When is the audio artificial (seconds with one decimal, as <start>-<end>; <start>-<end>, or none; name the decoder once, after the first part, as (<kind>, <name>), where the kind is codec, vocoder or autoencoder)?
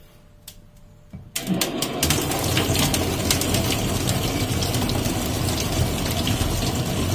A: none